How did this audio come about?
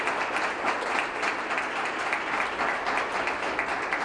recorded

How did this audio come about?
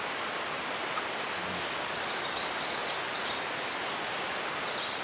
recorded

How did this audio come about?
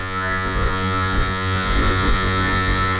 remade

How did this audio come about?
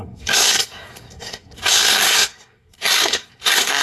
remade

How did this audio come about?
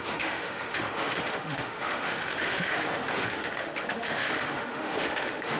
remade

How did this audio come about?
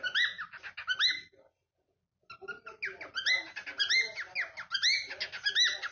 recorded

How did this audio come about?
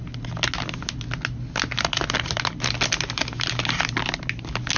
recorded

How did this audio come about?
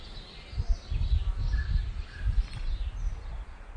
recorded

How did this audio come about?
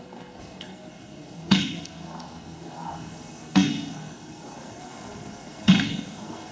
remade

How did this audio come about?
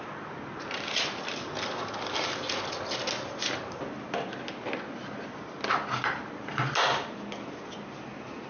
recorded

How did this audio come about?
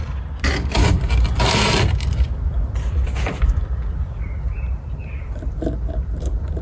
remade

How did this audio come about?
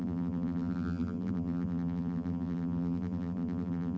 remade